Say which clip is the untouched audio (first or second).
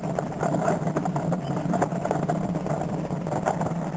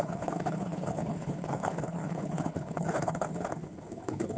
first